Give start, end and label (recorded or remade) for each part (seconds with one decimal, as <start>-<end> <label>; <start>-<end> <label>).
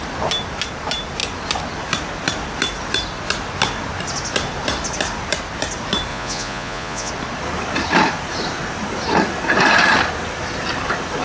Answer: 0.0-6.1 recorded; 6.1-7.1 remade; 7.1-11.2 recorded